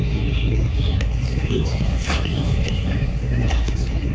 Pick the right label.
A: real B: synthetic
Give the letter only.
B